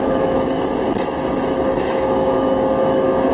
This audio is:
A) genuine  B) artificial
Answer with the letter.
B